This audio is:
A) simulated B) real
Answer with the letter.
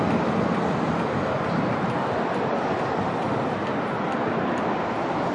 B